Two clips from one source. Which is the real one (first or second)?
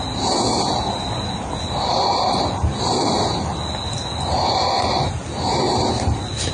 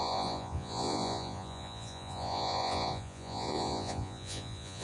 first